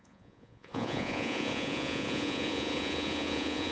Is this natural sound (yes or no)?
no